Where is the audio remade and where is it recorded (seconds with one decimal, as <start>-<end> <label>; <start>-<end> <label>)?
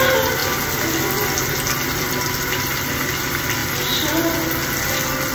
0.0-5.3 recorded